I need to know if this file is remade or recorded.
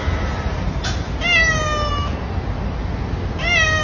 recorded